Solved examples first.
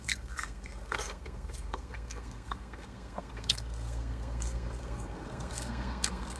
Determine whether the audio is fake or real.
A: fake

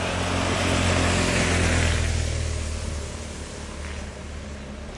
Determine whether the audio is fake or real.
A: real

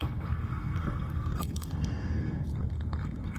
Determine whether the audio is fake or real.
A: fake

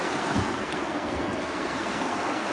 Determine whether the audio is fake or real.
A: fake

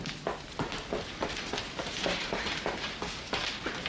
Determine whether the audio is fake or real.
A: real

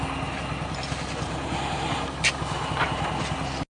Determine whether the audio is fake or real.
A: real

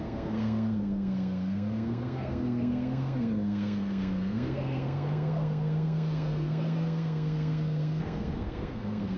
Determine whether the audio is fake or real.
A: fake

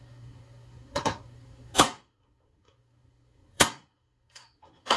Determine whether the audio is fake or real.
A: fake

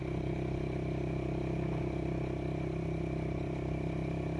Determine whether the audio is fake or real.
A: real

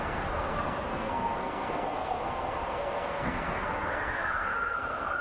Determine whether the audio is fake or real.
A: fake